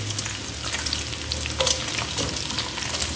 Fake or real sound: real